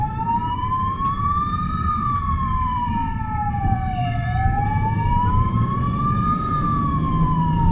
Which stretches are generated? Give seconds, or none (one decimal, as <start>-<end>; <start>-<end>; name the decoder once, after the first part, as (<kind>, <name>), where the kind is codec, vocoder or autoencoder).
0.0-7.7 (vocoder, BigVGAN v2)